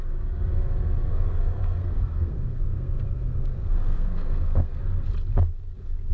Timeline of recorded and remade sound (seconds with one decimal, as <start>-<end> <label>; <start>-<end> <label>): 0.0-1.1 recorded; 1.1-4.8 remade; 4.8-6.1 recorded